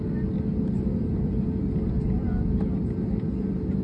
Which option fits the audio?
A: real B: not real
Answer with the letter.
A